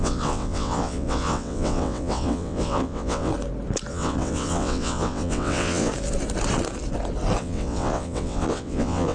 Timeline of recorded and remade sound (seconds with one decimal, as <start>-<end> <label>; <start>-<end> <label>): 0.0-3.3 remade; 3.3-3.9 recorded; 3.9-5.9 remade; 5.9-7.4 recorded; 7.4-9.1 remade